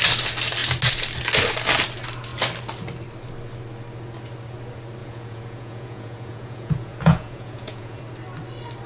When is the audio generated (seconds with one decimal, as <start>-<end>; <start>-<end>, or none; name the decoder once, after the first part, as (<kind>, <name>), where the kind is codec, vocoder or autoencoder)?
5.0-8.0 (vocoder, Vocos)